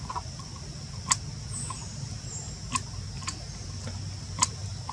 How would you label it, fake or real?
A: real